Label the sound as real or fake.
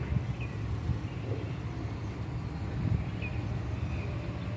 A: real